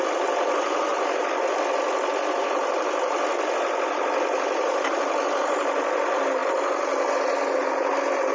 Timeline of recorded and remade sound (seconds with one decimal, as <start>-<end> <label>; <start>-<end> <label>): 0.0-8.3 recorded